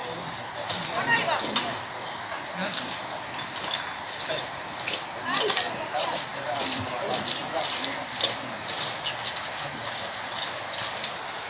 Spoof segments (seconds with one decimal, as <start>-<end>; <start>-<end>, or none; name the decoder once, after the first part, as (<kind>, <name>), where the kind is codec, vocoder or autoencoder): 6.3-8.1 (vocoder, BigVGAN v2)